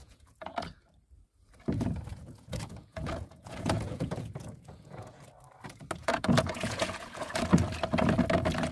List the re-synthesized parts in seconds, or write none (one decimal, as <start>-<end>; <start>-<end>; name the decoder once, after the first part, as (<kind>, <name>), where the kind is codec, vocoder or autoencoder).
0.0-0.5 (vocoder, Vocos); 2.1-5.2; 6.0-7.3